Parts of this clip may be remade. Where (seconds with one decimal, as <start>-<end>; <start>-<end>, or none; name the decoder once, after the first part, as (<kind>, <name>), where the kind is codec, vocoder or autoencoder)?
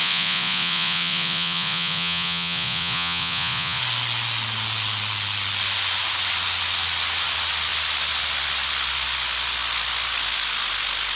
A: 0.0-3.8 (vocoder, Vocos)